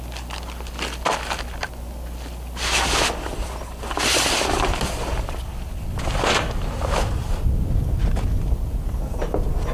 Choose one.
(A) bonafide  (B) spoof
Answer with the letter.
A